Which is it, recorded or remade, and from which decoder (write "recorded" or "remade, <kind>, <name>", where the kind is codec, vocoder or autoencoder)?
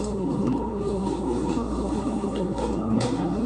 remade, codec, SNAC